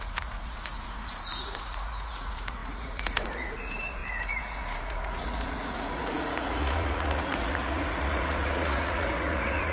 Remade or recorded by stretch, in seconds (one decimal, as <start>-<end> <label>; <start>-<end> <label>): 0.0-9.7 remade